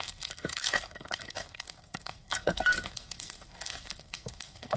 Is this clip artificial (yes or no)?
yes